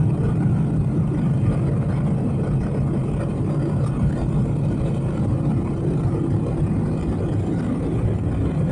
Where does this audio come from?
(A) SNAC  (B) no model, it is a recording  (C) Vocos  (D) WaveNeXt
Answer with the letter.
B